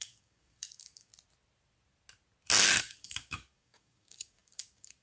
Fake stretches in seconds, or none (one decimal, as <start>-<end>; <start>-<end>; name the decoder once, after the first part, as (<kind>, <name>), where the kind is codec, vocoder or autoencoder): 0.0-1.1 (codec, DAC); 2.8-5.0